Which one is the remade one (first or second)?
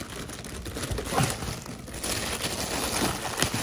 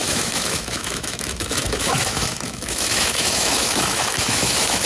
second